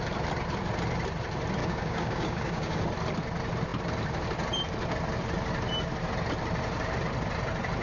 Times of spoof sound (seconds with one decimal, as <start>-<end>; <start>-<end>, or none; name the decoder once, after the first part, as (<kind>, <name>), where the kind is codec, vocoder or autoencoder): 1.6-2.8 (codec, DAC)